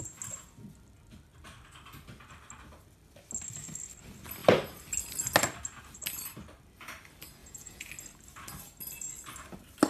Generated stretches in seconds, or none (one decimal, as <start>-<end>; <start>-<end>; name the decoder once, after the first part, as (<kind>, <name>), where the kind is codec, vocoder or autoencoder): 7.4-7.9 (vocoder, Vocos)